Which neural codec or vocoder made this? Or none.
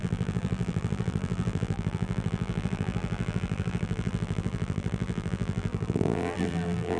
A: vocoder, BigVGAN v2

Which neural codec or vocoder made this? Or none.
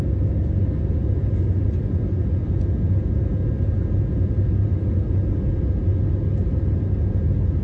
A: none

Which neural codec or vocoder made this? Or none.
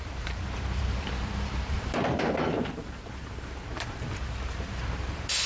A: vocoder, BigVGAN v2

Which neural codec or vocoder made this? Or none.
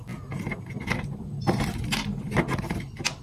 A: none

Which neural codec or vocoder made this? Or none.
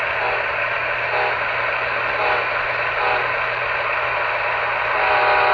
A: none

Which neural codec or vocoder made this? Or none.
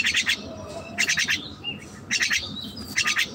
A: none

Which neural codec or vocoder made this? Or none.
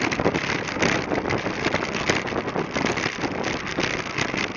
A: none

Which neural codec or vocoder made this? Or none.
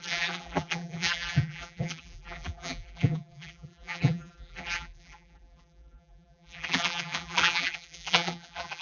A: vocoder, BigVGAN v2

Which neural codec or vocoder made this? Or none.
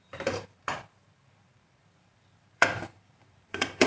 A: vocoder, BigVGAN v2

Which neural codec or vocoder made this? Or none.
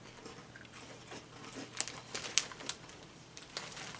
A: none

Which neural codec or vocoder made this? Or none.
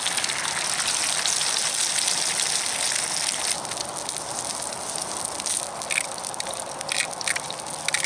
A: none